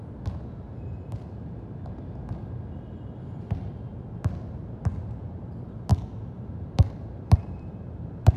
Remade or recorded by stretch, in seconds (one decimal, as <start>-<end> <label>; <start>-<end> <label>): 0.0-5.9 recorded; 5.9-8.4 remade